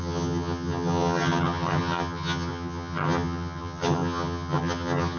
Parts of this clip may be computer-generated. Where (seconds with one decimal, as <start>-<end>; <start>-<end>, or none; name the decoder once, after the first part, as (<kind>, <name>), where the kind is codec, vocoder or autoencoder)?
0.0-5.2 (vocoder, HiFi-GAN)